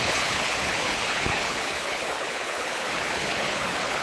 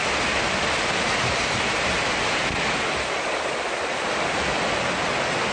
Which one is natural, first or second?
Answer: second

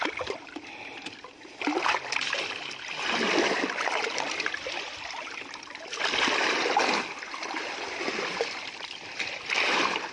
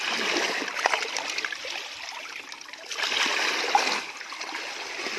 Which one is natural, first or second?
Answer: second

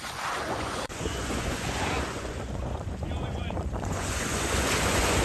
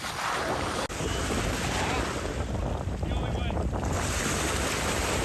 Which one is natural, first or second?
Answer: second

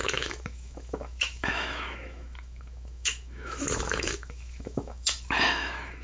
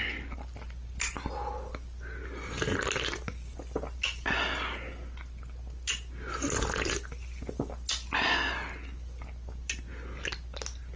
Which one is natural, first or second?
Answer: second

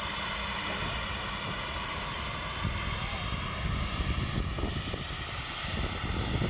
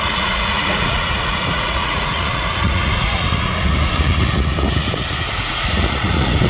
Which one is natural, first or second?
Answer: first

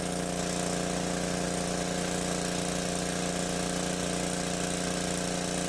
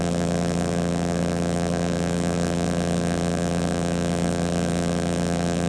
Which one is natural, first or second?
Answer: first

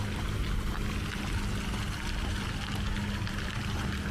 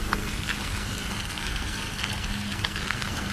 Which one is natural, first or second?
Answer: first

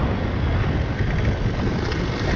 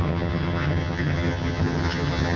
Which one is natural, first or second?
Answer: first